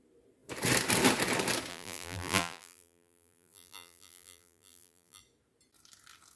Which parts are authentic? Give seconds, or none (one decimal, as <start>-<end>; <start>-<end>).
0.0-1.7; 5.2-6.4